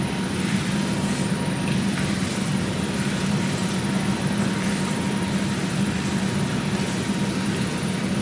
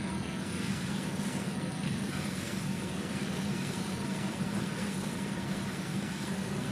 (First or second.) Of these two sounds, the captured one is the first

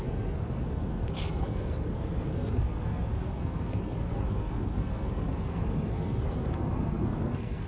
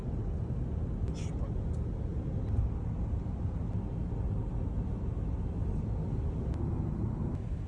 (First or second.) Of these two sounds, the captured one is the second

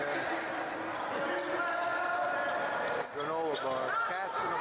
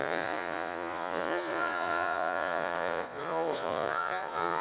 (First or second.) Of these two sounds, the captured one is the first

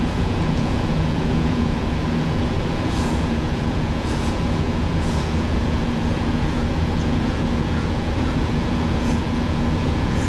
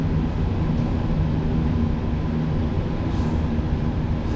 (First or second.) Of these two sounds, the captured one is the second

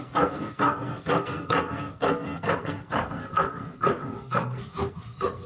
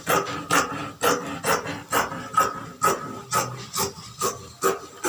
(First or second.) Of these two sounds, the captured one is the second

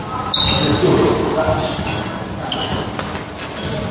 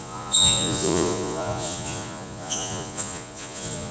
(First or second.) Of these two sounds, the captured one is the first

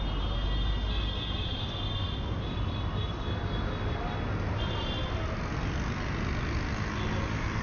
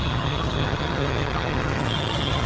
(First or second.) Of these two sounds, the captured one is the first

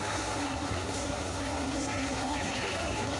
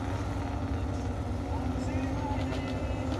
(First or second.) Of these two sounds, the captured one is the second